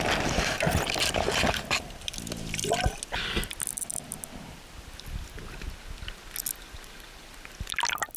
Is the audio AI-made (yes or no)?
no